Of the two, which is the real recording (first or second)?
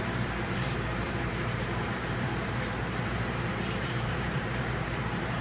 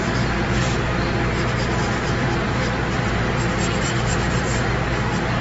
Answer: second